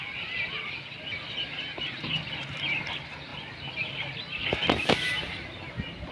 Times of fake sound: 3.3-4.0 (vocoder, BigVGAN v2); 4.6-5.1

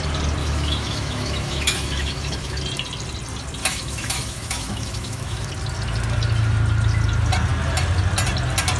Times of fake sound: 0.4-2.6 (autoencoder, DAC-VAE); 3.6-5.5

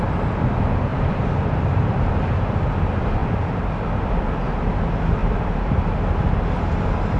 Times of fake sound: 0.9-1.9 (vocoder, BigVGAN v2); 3.2-3.8; 5.2-6.2

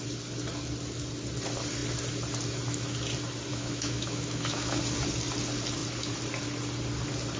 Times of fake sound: 3.5-4.8 (autoencoder, DAC-VAE)

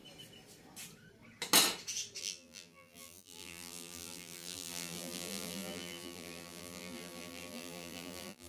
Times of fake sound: 2.2-8.5 (vocoder, BigVGAN v2)

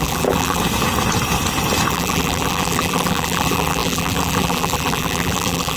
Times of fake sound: 0.0-0.6 (vocoder, BigVGAN v2); 1.9-5.8